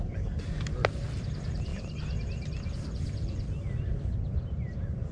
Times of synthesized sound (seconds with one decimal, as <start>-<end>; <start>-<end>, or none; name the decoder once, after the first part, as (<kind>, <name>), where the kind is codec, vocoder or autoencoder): none